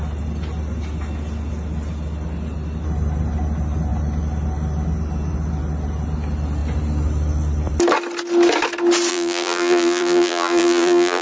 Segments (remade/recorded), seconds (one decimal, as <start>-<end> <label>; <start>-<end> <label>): 0.0-9.1 recorded; 9.1-11.2 remade